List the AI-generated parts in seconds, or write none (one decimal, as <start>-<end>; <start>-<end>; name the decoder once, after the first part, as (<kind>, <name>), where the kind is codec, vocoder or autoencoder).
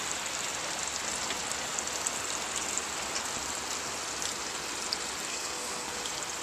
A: 5.3-6.0 (codec, SNAC)